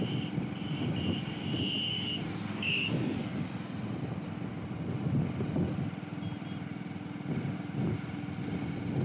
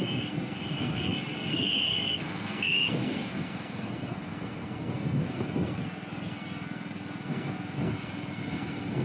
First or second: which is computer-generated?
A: second